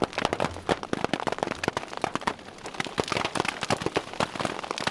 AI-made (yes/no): no